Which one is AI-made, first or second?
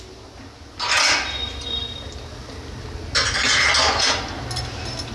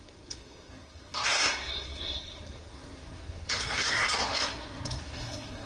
second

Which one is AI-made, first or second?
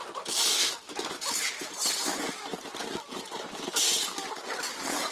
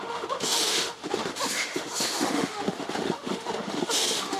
second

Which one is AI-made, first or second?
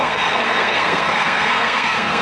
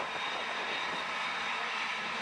first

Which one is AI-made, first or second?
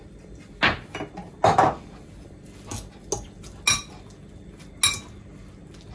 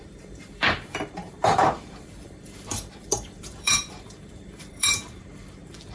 second